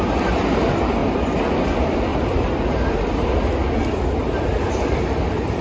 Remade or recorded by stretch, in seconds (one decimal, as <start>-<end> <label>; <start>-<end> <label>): 0.0-2.1 recorded; 2.1-2.6 remade; 2.6-4.2 recorded; 4.2-5.6 remade